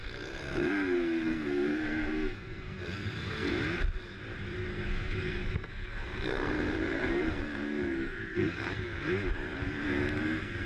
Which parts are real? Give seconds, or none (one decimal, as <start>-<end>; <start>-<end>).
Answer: 3.5-4.7; 9.1-9.6